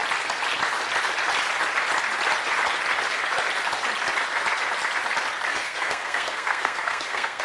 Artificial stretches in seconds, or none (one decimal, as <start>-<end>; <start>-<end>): 5.5-7.4